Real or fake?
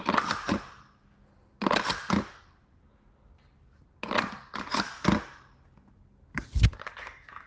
real